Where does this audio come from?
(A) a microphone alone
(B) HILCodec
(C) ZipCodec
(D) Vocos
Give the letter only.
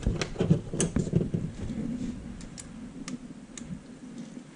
A